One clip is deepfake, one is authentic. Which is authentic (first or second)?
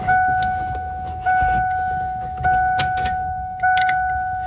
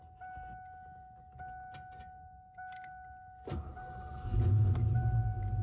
second